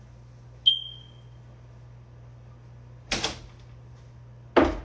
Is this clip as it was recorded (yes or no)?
yes